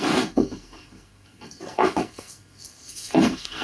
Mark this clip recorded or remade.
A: remade